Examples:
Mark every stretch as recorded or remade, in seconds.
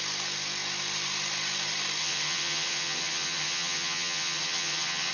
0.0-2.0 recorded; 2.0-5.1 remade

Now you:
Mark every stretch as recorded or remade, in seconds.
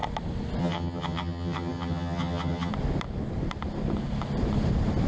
0.0-0.6 recorded; 0.6-2.7 remade; 2.7-5.1 recorded